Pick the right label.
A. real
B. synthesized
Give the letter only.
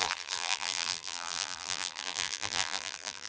B